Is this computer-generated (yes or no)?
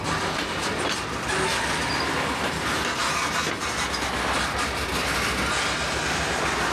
no